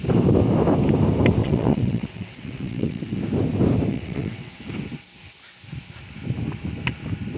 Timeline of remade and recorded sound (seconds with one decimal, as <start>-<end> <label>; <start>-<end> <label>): 0.0-1.4 recorded; 1.4-3.2 remade; 3.2-3.9 recorded; 3.9-4.6 remade; 4.6-7.4 recorded